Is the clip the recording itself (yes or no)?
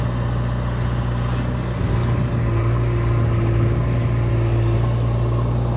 yes